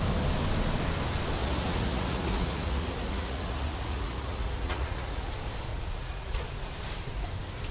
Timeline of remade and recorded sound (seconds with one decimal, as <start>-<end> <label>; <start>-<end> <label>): 0.0-1.4 recorded; 1.4-5.3 remade; 5.3-5.7 recorded; 5.7-6.4 remade; 6.4-7.7 recorded